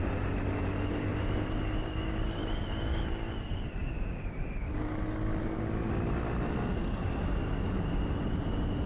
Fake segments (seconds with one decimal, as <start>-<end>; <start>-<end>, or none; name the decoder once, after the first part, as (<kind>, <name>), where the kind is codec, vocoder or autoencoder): none